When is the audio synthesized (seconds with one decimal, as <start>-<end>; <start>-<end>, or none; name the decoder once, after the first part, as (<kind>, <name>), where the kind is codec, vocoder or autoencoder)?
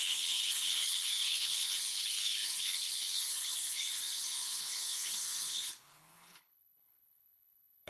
0.0-7.9 (codec, HILCodec)